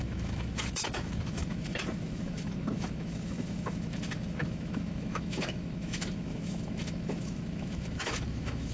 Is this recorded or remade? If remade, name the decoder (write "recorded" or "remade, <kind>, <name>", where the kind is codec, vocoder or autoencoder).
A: remade, autoencoder, DAC-VAE